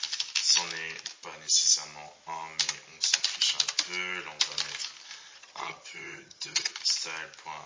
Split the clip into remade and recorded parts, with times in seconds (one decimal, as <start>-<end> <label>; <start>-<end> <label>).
0.0-5.3 recorded; 5.3-6.7 remade; 6.7-7.7 recorded